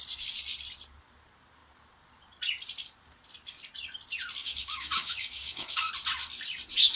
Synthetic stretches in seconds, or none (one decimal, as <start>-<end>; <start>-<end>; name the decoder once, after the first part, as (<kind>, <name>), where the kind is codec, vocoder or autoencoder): 4.4-5.9 (codec, DAC)